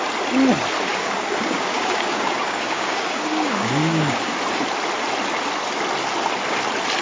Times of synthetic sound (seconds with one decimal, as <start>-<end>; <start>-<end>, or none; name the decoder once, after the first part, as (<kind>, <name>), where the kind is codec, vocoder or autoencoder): 0.9-4.4 (codec, DAC)